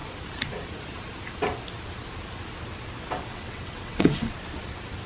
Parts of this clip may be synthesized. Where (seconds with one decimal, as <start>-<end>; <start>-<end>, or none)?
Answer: 3.3-4.3